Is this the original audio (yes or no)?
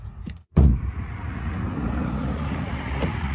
no